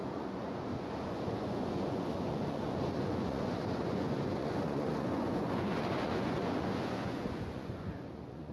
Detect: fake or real fake